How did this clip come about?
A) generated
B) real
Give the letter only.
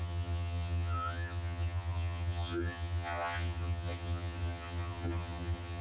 A